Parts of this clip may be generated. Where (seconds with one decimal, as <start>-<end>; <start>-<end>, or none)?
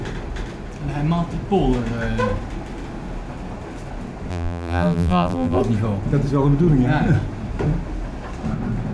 4.3-5.6